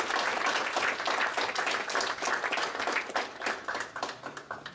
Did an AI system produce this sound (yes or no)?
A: no